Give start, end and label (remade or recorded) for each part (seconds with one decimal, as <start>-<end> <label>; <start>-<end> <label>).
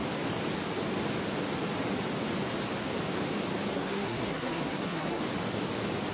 0.0-3.7 recorded; 3.7-5.2 remade; 5.2-6.1 recorded